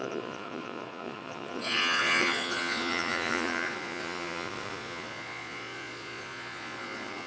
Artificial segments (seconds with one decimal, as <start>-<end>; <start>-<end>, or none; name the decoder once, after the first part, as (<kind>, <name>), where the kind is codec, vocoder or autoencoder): 0.0-7.3 (vocoder, Vocos)